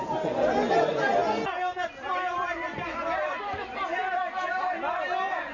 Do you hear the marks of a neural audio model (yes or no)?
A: no